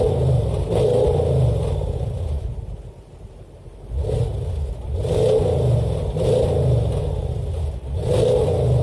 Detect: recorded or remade remade